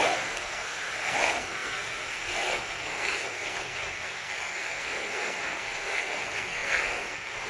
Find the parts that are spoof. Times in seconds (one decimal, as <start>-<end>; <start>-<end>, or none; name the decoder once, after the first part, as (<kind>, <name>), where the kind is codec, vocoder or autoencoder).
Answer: 0.0-7.5 (codec, SNAC)